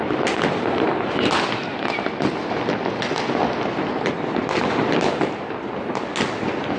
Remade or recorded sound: recorded